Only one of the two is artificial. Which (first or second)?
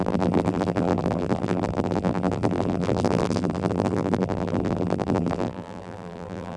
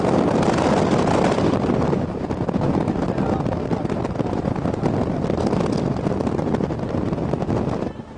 first